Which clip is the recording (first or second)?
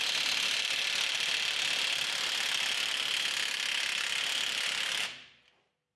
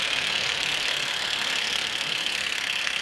first